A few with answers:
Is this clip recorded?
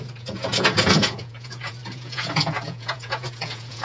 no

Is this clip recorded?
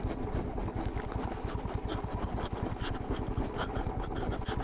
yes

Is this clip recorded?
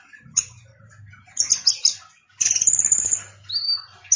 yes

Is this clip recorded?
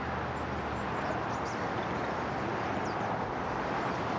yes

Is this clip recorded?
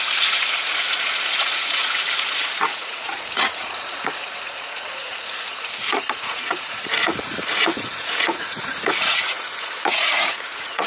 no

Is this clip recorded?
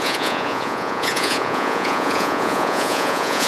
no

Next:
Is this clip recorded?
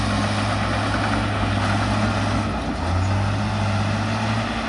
yes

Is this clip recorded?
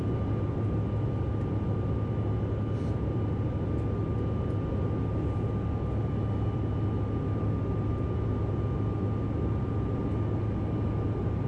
yes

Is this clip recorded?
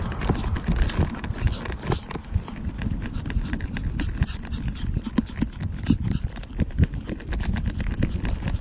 yes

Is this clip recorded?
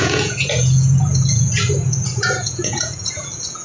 no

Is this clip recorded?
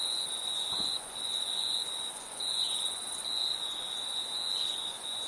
no